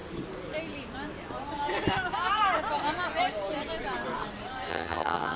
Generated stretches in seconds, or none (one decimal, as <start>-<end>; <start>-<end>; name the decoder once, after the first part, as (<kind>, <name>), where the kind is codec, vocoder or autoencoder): 4.7-5.4 (vocoder, HiFi-GAN)